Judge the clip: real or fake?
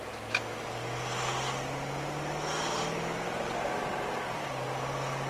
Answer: real